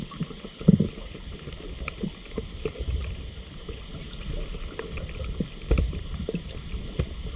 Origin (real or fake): real